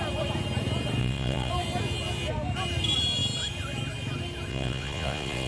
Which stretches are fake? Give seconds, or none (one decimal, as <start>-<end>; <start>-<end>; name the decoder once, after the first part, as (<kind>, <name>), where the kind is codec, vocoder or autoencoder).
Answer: 1.0-1.5 (vocoder, Vocos); 4.5-5.5